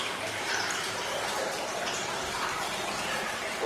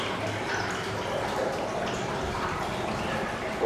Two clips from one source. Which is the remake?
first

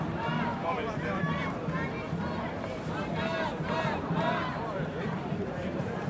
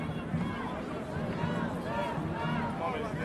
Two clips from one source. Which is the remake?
first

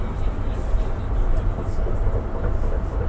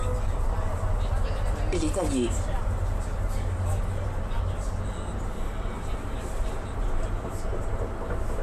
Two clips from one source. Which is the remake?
first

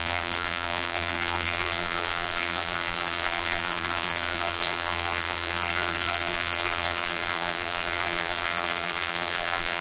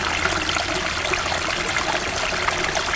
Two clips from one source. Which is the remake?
first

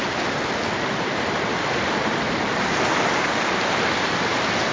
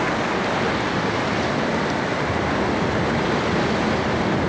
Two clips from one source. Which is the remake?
first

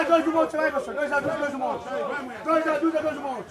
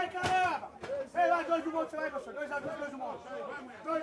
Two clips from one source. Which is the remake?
second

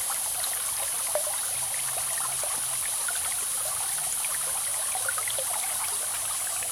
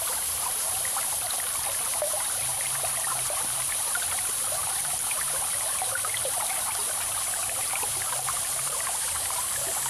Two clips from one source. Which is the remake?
second